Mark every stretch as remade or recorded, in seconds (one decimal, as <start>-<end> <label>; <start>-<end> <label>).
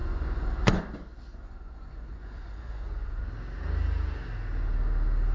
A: 0.0-0.8 remade; 0.8-1.3 recorded; 1.3-3.2 remade; 3.2-5.3 recorded